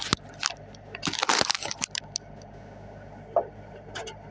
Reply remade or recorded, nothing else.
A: recorded